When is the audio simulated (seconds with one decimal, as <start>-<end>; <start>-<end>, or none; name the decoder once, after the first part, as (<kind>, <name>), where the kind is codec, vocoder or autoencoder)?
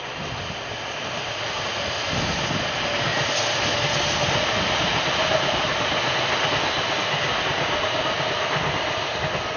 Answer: none